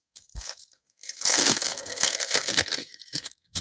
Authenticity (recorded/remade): remade